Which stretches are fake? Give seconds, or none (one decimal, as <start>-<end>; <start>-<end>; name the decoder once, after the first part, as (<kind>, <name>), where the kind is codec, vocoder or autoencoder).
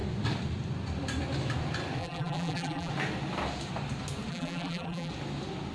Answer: 2.0-2.9 (vocoder, BigVGAN v2); 4.3-5.1